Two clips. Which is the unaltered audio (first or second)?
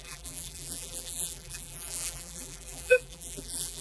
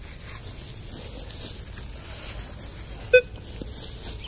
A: second